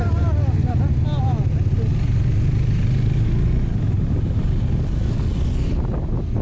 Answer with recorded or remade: recorded